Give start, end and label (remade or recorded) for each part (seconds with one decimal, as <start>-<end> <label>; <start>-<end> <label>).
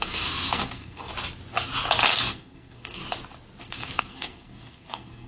0.0-1.1 remade; 1.1-2.1 recorded; 2.1-3.0 remade; 3.0-3.6 recorded; 3.6-5.3 remade